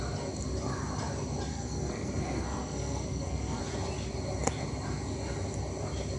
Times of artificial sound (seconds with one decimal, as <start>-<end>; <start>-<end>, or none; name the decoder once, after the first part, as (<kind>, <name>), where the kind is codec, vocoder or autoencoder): 1.5-3.6 (codec, SNAC)